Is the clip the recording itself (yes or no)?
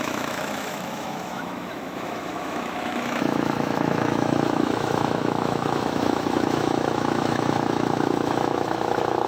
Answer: no